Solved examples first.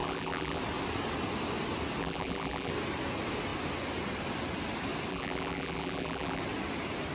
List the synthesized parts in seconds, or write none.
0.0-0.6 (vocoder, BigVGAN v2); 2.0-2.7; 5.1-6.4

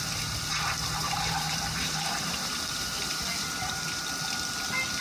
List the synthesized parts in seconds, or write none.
1.0-4.0 (vocoder, BigVGAN v2)

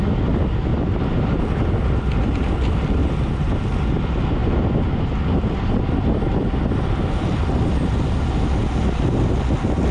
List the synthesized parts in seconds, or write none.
0.7-2.0 (vocoder, BigVGAN v2); 3.0-3.5; 4.4-5.1

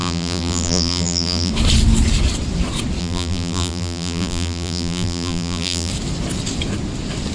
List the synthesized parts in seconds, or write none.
0.0-1.5 (vocoder, BigVGAN v2); 3.0-5.9

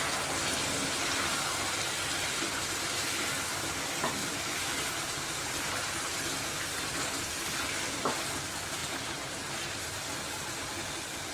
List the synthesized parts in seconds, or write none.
4.2-5.5 (vocoder, BigVGAN v2); 8.8-9.5

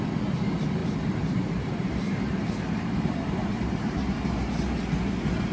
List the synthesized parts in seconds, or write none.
0.8-4.1 (vocoder, BigVGAN v2)

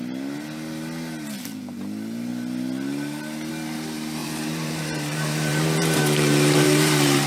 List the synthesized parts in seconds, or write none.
4.2-7.3 (vocoder, BigVGAN v2)

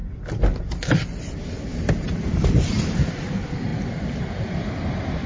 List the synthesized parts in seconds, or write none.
1.7-3.3 (vocoder, BigVGAN v2)